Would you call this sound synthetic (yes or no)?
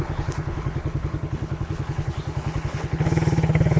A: yes